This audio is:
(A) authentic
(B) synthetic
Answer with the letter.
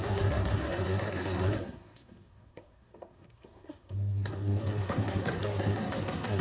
B